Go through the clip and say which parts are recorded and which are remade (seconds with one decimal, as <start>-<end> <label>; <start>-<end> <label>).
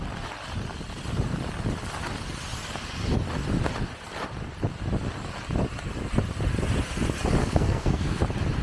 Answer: 0.0-7.4 recorded; 7.4-8.2 remade; 8.2-8.6 recorded